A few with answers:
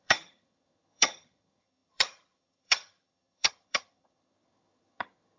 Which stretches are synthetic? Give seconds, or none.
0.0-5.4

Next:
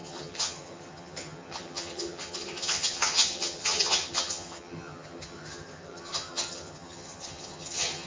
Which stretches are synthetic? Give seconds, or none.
0.0-8.1

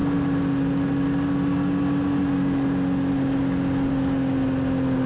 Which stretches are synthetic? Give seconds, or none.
none